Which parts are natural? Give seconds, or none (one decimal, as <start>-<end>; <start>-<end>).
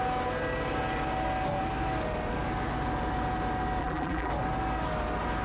0.0-3.8; 4.3-5.4